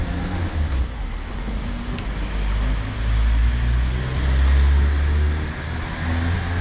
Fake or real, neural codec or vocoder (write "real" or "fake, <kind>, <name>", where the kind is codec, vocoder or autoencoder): real